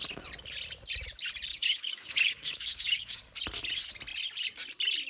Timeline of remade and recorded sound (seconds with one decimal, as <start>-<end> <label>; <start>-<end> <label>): 0.0-1.5 recorded; 1.5-3.2 remade; 3.2-5.1 recorded